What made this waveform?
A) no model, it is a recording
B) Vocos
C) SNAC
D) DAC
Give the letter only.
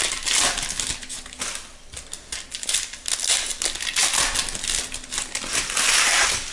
A